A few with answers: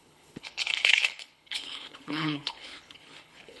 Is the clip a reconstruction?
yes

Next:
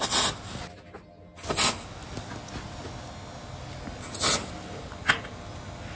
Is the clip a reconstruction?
no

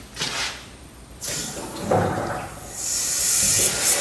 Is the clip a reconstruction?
no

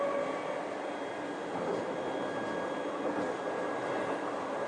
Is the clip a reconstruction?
no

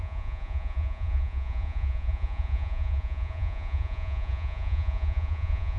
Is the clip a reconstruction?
yes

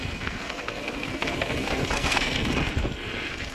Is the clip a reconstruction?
yes